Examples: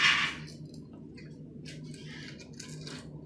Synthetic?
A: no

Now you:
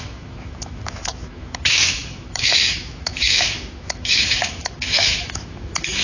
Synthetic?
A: yes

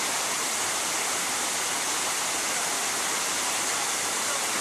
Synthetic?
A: yes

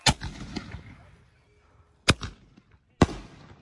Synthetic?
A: no